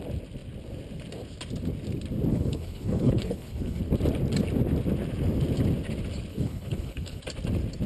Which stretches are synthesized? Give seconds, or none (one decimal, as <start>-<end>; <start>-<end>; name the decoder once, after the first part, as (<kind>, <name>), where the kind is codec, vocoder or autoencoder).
2.3-3.8 (codec, HILCodec); 6.3-7.2